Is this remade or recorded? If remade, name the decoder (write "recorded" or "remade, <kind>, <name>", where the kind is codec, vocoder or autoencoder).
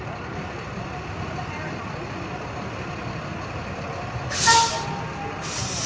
recorded